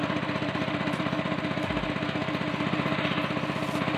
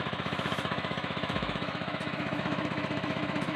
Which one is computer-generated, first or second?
second